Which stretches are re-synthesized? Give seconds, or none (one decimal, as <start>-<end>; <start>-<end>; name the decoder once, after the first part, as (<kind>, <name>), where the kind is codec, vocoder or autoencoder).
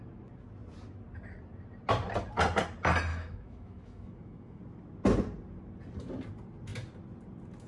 3.1-4.6 (autoencoder, DAC-VAE)